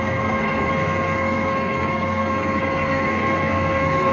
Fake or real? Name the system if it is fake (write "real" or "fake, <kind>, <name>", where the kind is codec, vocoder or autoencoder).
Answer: fake, codec, SNAC